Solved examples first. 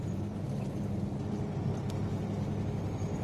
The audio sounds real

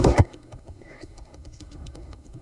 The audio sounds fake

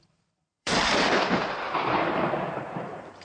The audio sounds fake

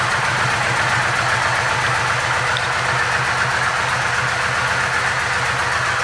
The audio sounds real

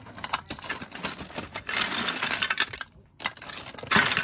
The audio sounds real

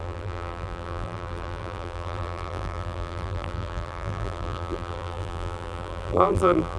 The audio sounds fake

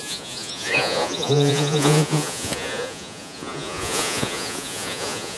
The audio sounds fake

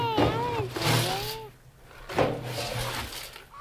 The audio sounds real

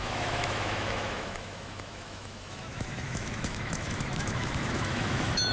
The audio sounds fake